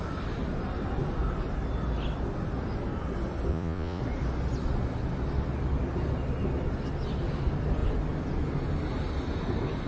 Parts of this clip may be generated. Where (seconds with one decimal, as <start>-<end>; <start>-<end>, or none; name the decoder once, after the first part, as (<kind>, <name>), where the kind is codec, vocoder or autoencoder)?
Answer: 3.5-4.0 (vocoder, Vocos)